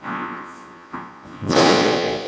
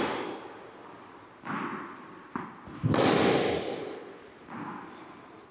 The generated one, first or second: first